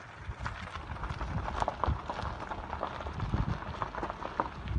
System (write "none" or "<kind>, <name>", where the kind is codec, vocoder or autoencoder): none